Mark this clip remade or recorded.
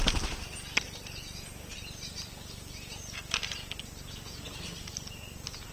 recorded